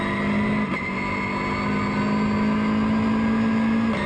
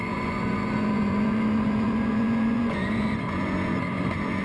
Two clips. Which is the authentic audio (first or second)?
first